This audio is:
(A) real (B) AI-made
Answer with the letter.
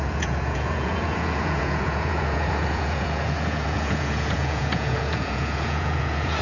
B